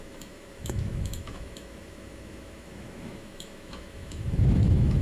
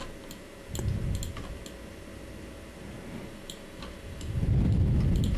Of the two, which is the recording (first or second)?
second